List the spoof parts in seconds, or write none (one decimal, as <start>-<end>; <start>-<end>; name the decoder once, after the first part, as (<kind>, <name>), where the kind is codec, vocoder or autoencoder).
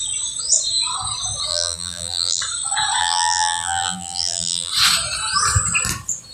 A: 1.5-2.4 (vocoder, BigVGAN v2); 3.0-4.7